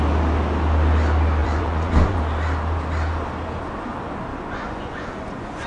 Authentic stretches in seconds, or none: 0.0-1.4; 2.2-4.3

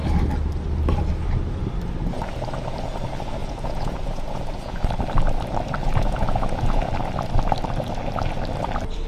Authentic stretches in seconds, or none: 0.0-3.4; 4.8-5.8; 6.9-9.1